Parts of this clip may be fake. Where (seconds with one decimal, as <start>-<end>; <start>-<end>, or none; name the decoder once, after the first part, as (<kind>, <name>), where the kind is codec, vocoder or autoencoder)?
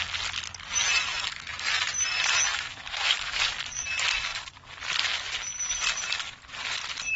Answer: 1.1-1.6 (autoencoder, DAC-VAE); 2.5-3.4